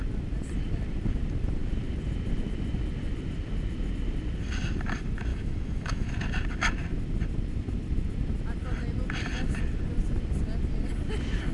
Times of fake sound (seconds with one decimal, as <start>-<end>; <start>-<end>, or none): 5.3-6.1